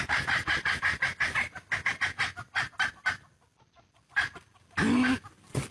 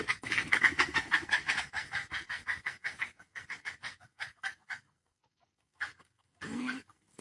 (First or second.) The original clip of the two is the first